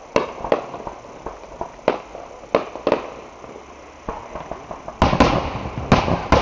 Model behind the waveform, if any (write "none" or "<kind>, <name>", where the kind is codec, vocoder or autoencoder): none